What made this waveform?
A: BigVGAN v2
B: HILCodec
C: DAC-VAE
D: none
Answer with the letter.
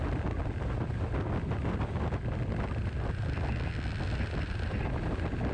D